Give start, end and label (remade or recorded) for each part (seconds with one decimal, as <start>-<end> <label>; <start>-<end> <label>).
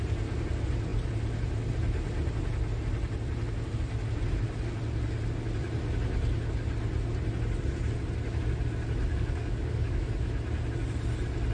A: 0.0-9.1 recorded; 9.1-10.1 remade; 10.1-11.5 recorded